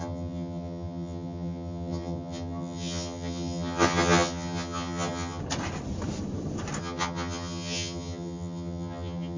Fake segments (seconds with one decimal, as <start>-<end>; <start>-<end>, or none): 0.0-5.4; 6.8-9.4